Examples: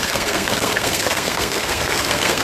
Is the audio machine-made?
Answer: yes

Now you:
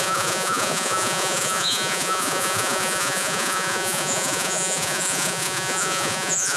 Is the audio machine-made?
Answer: yes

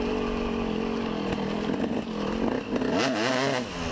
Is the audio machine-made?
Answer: no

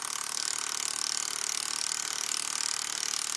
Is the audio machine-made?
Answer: no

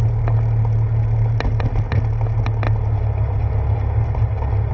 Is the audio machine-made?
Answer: no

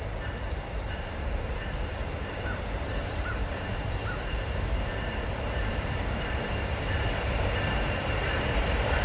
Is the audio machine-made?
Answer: yes